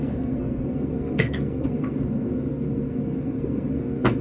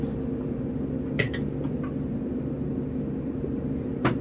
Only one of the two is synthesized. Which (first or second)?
first